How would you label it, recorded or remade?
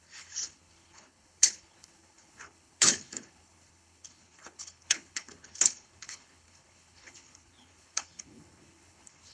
remade